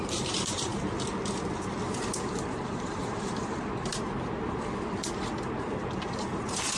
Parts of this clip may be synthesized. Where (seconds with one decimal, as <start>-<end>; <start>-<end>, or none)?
0.0-0.7; 2.5-3.9; 5.6-6.8